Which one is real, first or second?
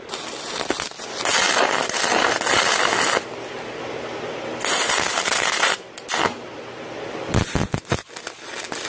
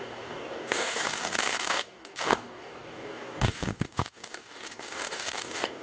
first